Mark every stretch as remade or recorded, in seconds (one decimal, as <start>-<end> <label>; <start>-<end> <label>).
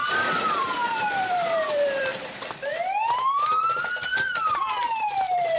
0.0-5.6 remade